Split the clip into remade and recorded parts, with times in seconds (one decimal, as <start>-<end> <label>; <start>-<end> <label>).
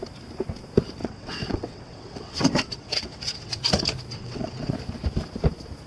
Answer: 0.0-1.0 recorded; 1.0-3.6 remade; 3.6-4.1 recorded; 4.1-4.7 remade; 4.7-5.9 recorded